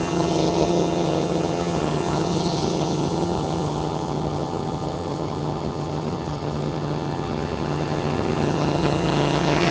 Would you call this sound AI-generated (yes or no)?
yes